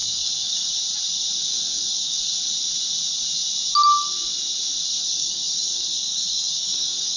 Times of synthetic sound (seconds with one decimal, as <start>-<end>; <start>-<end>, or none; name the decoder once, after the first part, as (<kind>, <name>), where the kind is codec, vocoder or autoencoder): 0.0-0.8 (codec, DAC); 1.5-2.2; 5.0-7.2

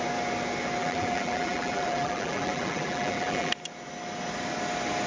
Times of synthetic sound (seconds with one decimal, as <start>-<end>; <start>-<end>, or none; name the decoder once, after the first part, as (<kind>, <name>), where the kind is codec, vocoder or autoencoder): 0.8-3.5 (vocoder, BigVGAN v2)

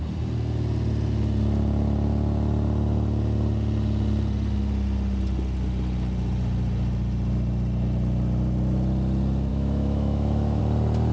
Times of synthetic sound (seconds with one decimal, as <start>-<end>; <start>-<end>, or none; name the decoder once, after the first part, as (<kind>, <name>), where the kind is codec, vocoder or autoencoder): 9.5-10.6 (autoencoder, DAC-VAE)

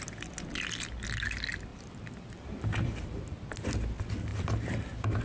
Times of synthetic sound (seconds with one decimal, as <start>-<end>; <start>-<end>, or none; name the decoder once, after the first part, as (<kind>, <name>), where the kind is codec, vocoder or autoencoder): 1.7-3.2 (vocoder, BigVGAN v2); 4.3-5.2

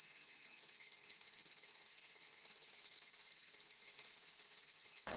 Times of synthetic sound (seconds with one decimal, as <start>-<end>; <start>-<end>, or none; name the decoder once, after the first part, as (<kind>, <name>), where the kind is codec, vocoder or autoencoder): 0.0-5.2 (codec, SNAC)

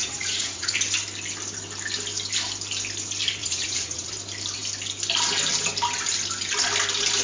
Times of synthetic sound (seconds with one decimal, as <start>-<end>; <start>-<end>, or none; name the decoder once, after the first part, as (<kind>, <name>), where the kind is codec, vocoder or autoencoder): 0.0-0.7 (vocoder, Vocos); 3.4-4.1